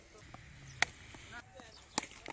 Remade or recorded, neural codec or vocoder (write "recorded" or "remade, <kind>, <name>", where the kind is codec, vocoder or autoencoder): recorded